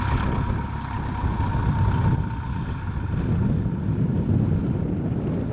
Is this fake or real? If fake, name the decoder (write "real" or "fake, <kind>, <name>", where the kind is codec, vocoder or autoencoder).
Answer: real